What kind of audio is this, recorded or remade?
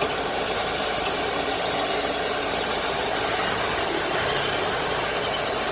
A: remade